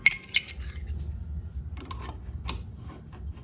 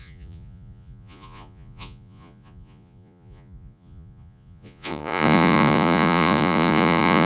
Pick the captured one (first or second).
first